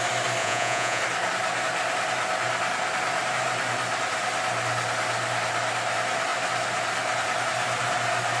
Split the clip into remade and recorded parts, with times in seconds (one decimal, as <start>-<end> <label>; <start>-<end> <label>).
0.0-0.4 recorded; 0.4-1.0 remade; 1.0-8.4 recorded